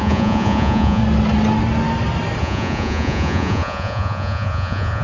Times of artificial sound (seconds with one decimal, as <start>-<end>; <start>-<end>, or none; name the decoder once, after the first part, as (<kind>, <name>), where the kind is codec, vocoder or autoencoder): 0.0-1.0 (vocoder, Vocos); 2.4-5.0

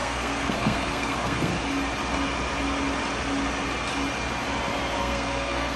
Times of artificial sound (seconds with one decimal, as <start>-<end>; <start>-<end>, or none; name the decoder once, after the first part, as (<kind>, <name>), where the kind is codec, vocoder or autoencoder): 0.0-1.5 (codec, SNAC); 5.0-5.8

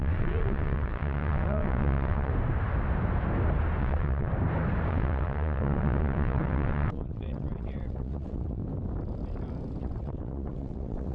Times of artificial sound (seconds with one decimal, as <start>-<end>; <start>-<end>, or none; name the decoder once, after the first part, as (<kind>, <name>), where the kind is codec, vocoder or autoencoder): 0.0-2.3 (vocoder, WaveNeXt); 3.8-4.3; 4.9-8.6; 9.8-11.1

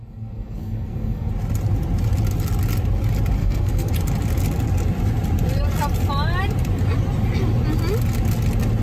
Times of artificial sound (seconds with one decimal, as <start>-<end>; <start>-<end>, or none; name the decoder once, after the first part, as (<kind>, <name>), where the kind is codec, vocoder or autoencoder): 0.0-1.3 (codec, SNAC); 3.4-3.9

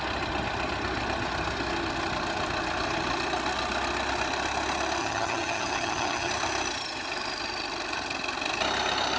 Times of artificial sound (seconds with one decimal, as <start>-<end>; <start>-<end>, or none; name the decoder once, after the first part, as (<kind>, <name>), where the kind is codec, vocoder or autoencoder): 5.0-6.3 (vocoder, HiFi-GAN)

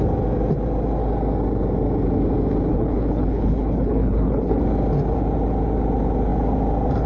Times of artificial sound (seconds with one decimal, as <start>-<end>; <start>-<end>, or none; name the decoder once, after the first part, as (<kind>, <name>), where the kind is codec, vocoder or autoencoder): 2.7-4.6 (codec, HILCodec)